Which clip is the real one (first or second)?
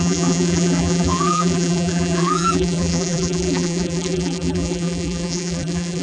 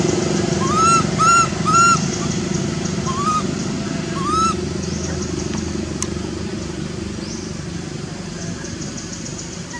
second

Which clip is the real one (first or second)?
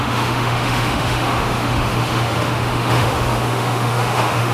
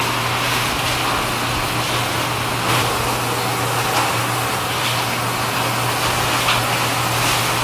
second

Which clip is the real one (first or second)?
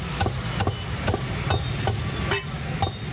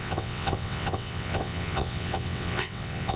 first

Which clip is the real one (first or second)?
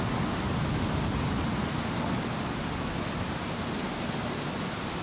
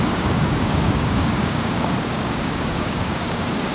first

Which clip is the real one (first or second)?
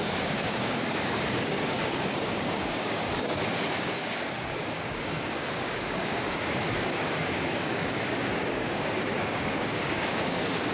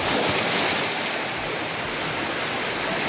second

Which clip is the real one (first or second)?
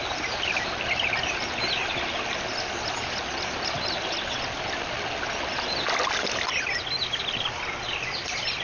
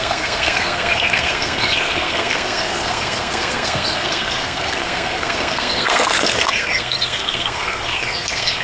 first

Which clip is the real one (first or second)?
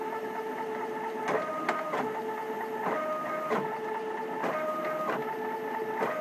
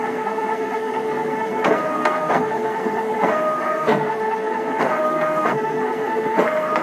first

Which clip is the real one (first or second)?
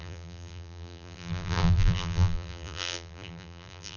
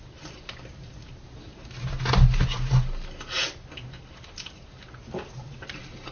second